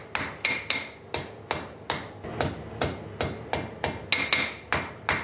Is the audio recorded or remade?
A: recorded